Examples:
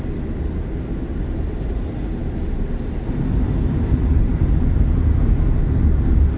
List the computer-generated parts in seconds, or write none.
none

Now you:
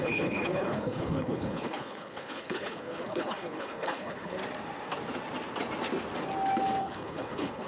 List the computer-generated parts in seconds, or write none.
0.0-4.4 (codec, HILCodec); 6.8-7.7

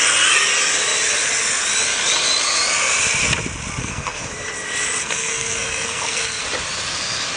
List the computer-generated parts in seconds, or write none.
3.8-4.3 (codec, SNAC); 5.0-6.4

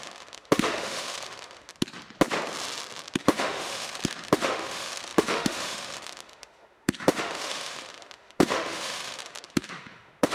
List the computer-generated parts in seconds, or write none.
0.0-1.7 (autoencoder, DAC-VAE); 3.2-10.3

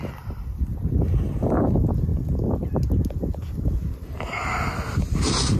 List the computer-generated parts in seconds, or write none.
none